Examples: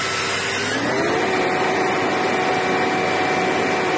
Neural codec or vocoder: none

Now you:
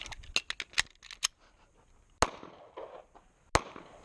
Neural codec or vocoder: none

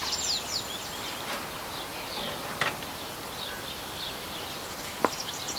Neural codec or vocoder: none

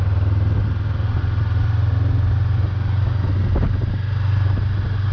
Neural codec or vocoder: none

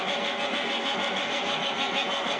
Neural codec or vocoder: codec, SNAC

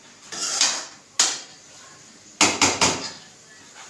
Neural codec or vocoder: none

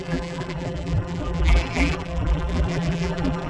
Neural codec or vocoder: vocoder, BigVGAN v2